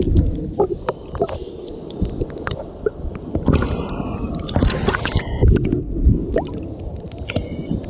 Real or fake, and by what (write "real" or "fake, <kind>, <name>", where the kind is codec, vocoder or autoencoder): real